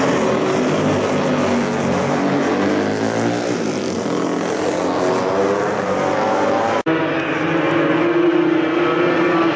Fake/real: real